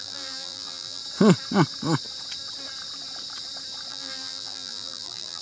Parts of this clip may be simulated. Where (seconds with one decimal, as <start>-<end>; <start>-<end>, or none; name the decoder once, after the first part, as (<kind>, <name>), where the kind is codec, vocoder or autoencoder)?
0.0-1.0 (vocoder, BigVGAN v2); 3.9-5.4